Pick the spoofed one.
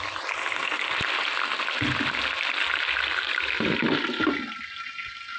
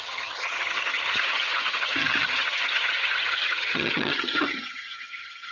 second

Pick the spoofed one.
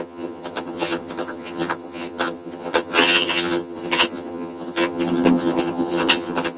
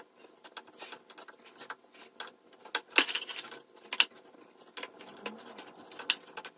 first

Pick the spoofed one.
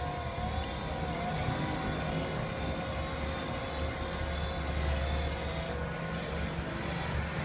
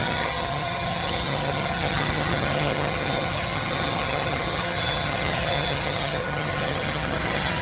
second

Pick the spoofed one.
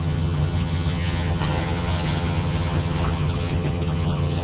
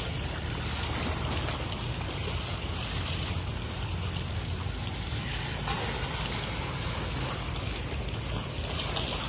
first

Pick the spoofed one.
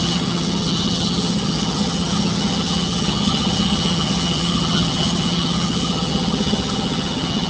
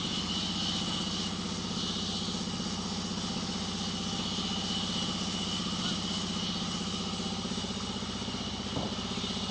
first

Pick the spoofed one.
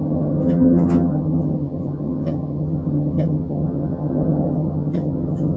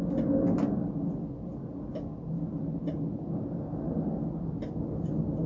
first